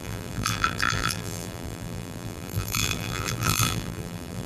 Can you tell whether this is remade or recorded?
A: remade